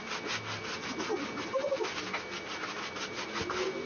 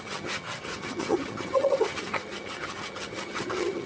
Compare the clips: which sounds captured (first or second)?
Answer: first